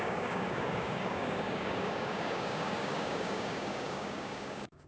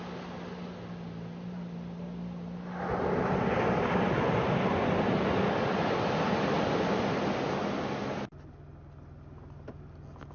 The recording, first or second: second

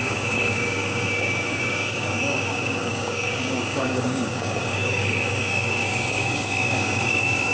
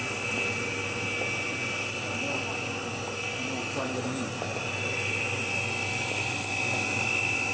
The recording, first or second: second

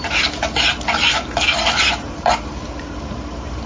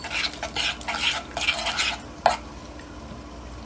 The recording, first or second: second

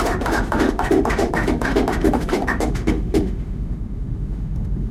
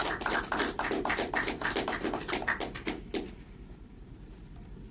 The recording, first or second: second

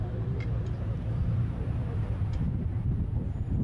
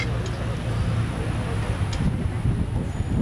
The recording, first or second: second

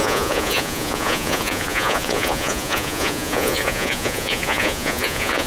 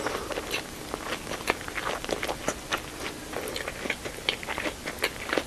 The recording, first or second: second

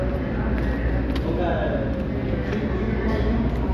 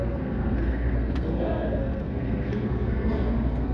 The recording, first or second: first